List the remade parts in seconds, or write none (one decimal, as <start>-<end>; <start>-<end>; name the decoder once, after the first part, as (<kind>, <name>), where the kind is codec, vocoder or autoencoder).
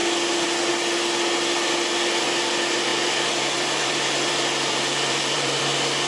2.9-5.6 (vocoder, BigVGAN v2)